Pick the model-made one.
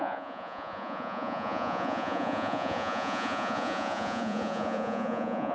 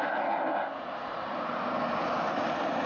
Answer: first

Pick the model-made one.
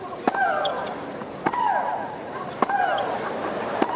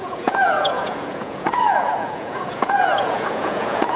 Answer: second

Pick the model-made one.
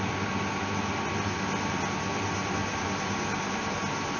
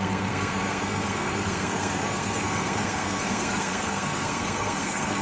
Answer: second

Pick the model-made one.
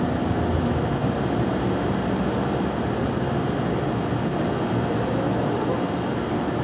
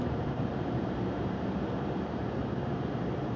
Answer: second